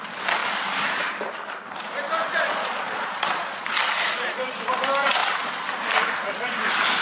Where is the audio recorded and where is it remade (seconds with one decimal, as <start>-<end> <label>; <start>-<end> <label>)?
0.0-2.3 recorded; 2.3-3.7 remade; 3.7-7.0 recorded